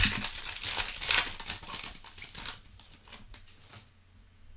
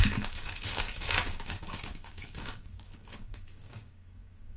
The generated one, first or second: second